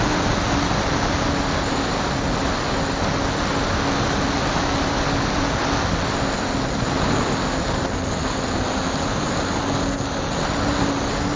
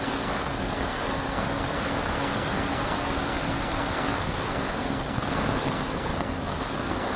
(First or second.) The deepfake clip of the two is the second